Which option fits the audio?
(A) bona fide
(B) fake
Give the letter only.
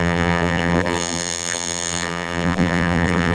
B